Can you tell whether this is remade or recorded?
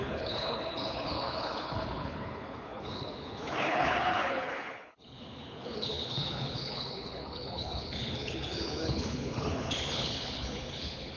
remade